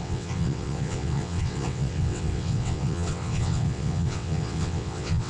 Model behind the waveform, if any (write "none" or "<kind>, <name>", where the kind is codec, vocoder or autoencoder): vocoder, WaveNeXt